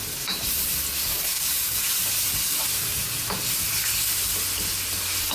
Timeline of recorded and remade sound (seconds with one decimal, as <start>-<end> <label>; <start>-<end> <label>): 0.0-1.1 recorded; 1.1-1.8 remade; 1.8-5.3 recorded